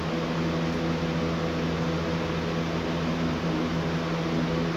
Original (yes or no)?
yes